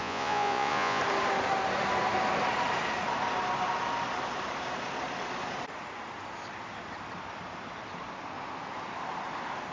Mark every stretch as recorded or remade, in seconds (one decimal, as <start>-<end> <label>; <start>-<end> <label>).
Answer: 0.0-1.0 remade; 1.0-9.7 recorded